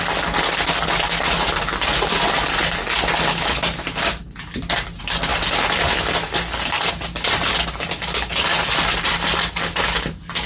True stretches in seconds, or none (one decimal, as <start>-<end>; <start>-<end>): 0.0-10.5